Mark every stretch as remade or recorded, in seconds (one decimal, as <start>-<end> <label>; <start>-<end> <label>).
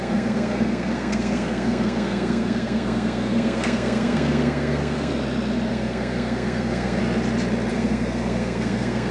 0.0-5.1 remade; 5.1-5.7 recorded; 5.7-7.0 remade; 7.0-7.7 recorded; 7.7-9.1 remade